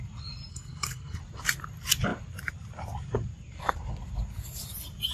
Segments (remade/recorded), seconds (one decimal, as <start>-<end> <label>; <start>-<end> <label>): 0.0-0.5 recorded; 0.5-1.2 remade; 1.2-5.1 recorded